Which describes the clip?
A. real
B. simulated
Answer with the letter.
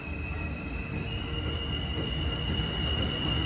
A